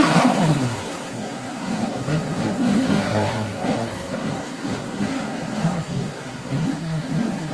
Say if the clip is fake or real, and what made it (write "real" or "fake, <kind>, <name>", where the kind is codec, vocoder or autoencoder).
fake, codec, SNAC